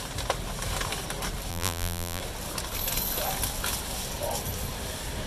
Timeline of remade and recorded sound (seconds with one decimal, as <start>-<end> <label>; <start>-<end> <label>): 0.0-1.5 recorded; 1.5-2.2 remade; 2.2-5.3 recorded